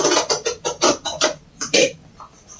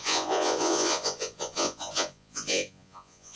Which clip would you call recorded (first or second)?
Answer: first